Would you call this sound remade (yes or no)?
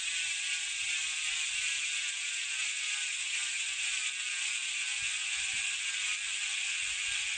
no